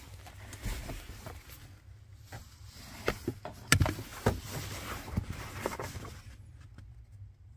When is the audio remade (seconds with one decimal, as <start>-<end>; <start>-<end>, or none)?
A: none